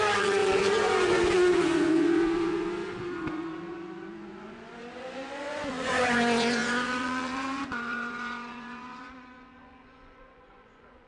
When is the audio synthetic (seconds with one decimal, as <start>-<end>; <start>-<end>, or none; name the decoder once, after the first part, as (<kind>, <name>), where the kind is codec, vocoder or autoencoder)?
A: 0.0-11.1 (vocoder, Vocos)